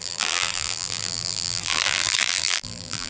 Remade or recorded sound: remade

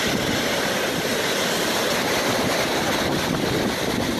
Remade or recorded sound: recorded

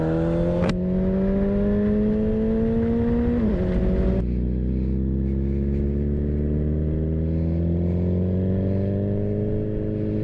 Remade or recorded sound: recorded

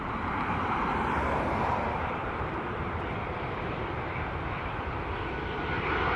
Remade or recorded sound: remade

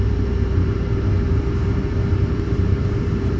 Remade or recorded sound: remade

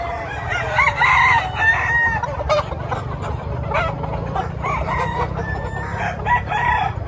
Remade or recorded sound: remade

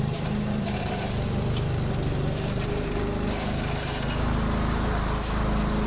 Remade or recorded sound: remade